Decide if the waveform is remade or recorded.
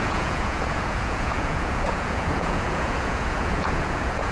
remade